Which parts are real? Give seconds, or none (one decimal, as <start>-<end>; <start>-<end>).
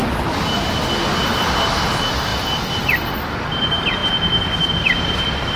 0.0-2.3; 2.8-5.6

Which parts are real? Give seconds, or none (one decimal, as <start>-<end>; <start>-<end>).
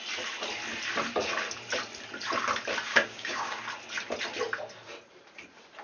0.0-2.9; 3.6-5.8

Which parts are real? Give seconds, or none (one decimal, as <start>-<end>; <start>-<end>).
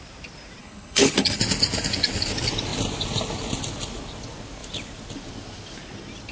0.0-0.6; 1.4-6.3